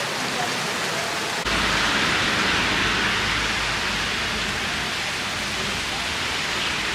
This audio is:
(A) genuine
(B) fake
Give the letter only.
A